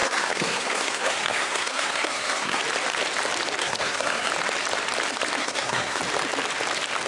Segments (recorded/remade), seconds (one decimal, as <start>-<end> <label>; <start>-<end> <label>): 0.0-2.6 remade; 2.6-3.6 recorded; 3.6-4.3 remade; 4.3-5.4 recorded; 5.4-6.0 remade; 6.0-7.1 recorded